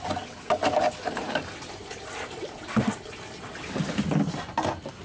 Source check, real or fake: real